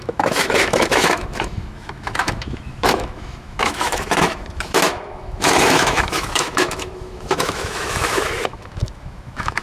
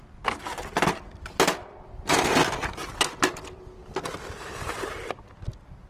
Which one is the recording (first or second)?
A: second